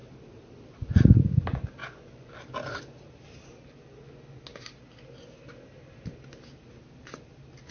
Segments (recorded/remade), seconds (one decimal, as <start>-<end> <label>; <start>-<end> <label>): 0.0-1.8 recorded; 1.8-2.3 remade; 2.3-7.7 recorded